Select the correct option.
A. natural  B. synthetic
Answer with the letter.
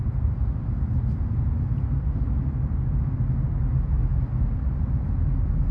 A